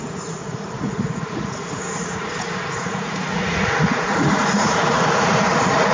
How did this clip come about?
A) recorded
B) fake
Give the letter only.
B